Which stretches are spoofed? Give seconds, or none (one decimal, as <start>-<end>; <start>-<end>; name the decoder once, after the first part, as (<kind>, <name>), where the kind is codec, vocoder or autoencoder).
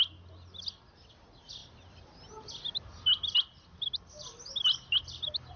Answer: none